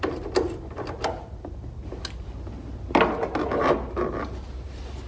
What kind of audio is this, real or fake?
real